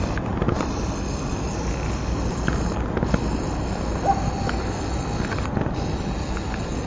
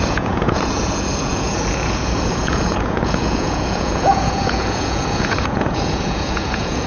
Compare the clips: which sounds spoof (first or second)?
second